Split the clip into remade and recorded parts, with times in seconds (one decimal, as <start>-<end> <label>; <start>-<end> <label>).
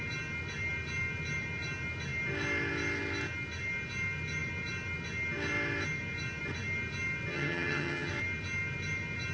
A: 0.0-7.3 recorded; 7.3-8.1 remade; 8.1-9.3 recorded